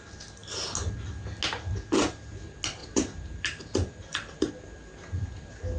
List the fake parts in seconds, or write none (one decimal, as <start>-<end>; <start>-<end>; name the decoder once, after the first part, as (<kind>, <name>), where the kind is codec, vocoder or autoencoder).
2.8-4.5 (vocoder, BigVGAN v2)